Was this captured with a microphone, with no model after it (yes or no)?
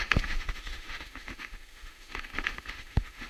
no